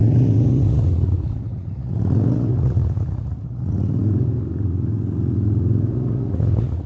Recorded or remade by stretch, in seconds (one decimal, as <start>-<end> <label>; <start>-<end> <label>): 0.0-6.9 remade